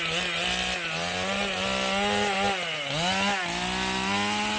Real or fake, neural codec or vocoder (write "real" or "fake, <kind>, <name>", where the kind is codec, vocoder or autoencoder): real